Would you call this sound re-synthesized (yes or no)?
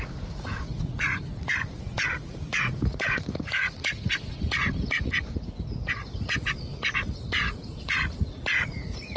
yes